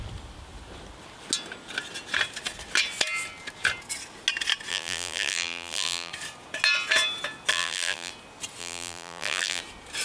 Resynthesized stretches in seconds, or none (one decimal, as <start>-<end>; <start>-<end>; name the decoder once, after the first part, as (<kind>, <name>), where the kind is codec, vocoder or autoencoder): 4.7-6.1 (vocoder, BigVGAN v2); 7.5-8.1; 8.6-9.6